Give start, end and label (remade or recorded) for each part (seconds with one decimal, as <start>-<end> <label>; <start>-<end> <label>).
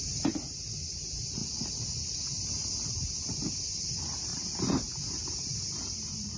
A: 0.0-4.3 recorded; 4.3-6.4 remade